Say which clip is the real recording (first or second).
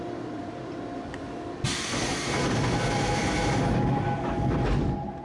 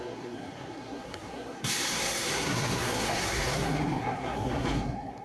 first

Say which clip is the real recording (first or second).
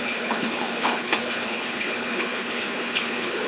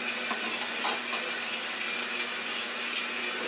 second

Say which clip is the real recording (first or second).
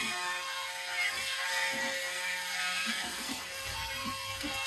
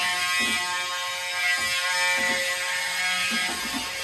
second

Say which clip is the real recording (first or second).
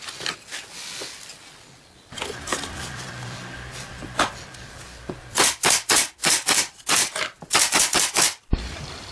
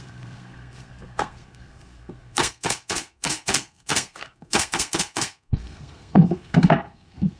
first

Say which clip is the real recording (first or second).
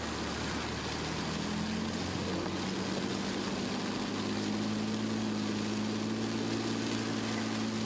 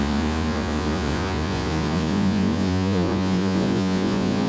first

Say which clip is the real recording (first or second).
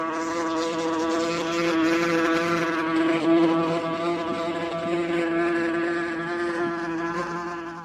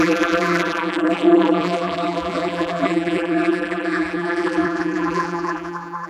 first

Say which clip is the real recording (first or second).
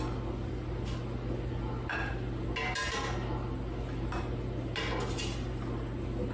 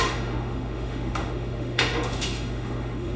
first